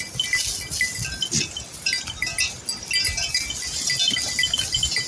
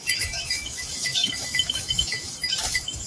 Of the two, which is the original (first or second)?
first